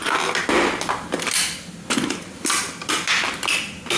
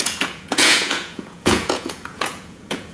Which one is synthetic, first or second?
second